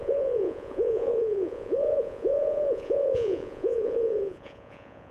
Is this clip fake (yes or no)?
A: yes